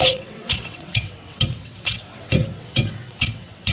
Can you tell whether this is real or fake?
fake